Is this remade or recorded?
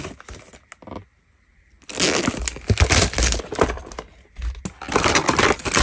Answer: recorded